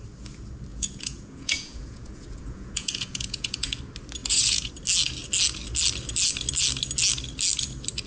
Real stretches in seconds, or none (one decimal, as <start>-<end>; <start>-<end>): 0.0-0.7; 3.8-4.2; 4.7-8.1